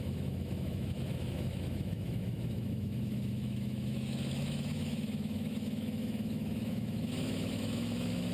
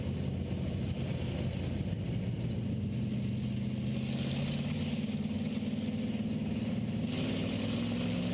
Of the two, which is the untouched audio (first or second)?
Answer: second